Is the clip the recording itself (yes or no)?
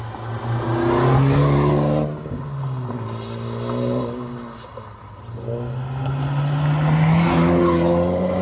yes